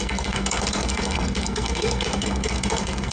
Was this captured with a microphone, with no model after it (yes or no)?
no